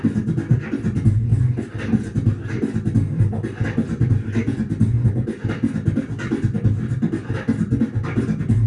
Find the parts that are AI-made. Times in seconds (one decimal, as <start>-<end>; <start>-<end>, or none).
none